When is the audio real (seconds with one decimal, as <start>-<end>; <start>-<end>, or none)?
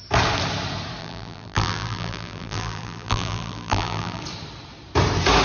0.0-1.0; 4.2-5.4